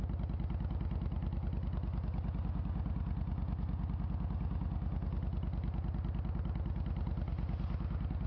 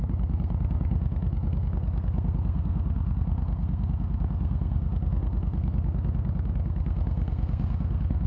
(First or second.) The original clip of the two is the first